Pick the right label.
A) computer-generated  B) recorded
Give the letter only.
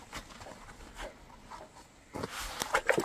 B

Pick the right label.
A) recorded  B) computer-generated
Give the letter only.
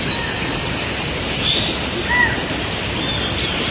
A